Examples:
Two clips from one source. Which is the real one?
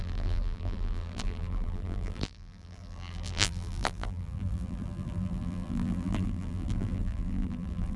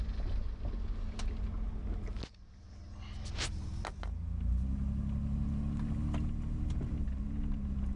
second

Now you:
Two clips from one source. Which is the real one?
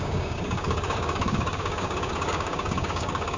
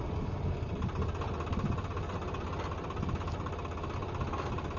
second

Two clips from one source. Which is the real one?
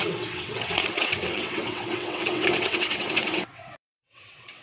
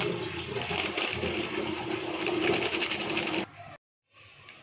second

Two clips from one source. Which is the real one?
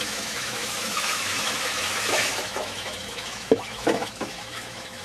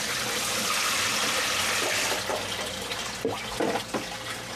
second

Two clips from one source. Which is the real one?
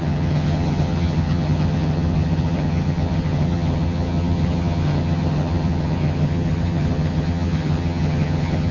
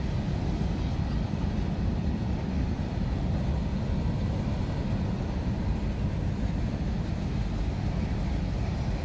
second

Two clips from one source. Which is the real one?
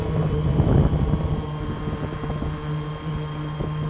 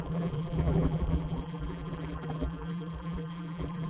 first